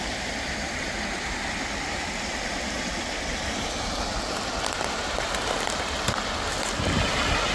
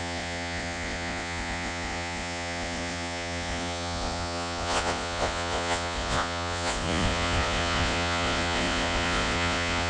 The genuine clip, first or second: first